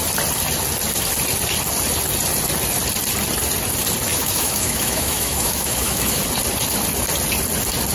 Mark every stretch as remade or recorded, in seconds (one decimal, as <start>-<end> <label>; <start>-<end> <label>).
0.0-4.1 recorded; 4.1-6.2 remade; 6.2-7.9 recorded